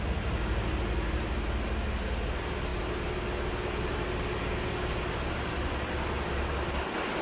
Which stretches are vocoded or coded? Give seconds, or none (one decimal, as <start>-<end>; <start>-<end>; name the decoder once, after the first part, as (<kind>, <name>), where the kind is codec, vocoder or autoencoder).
none